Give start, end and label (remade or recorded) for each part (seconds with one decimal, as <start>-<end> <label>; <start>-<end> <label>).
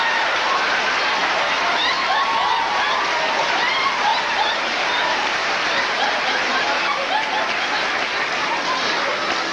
0.0-4.1 recorded; 4.1-7.3 remade; 7.3-9.5 recorded